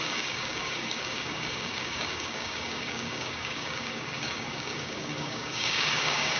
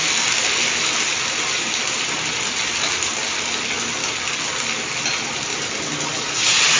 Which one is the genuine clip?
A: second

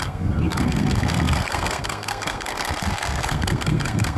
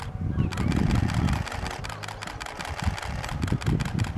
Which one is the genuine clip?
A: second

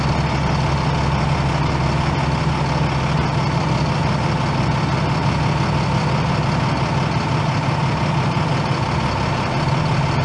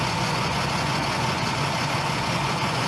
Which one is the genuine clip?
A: first